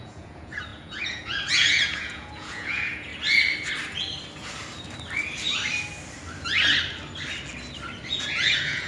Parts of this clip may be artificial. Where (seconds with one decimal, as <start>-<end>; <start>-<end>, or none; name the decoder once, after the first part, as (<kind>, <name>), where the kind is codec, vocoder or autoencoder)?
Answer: 0.0-3.1 (vocoder, Vocos); 8.2-8.9